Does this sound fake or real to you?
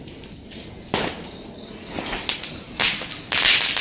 real